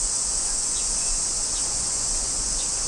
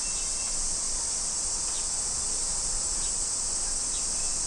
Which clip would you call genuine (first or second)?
second